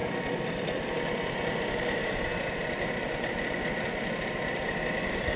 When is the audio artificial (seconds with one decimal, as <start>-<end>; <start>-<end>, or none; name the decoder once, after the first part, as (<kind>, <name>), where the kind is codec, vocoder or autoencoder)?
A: 0.0-0.9 (vocoder, BigVGAN v2)